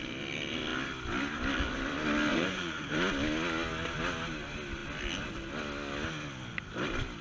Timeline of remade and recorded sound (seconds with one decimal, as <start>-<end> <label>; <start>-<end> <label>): 0.0-2.3 recorded; 2.3-2.9 remade; 2.9-7.2 recorded